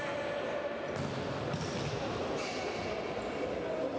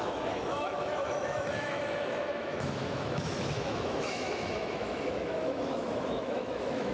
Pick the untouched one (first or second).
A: first